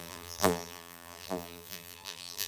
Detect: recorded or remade remade